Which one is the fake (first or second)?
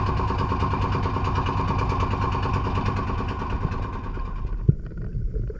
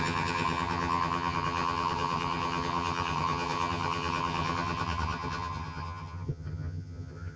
second